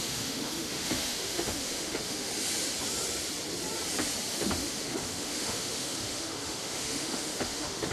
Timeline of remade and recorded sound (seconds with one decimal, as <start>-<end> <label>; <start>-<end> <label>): 0.0-2.3 remade; 2.3-4.3 recorded; 4.3-7.9 remade